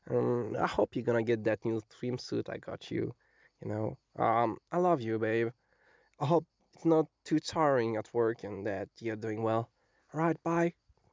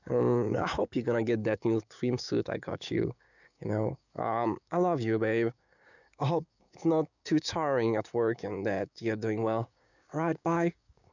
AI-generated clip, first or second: second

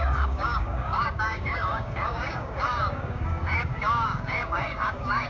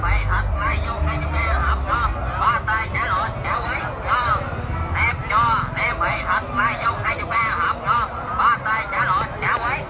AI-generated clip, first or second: first